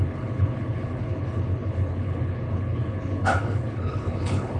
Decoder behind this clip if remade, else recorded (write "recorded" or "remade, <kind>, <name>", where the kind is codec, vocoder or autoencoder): remade, codec, HILCodec